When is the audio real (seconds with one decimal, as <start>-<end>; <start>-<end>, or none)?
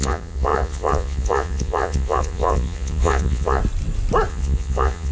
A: 3.6-4.3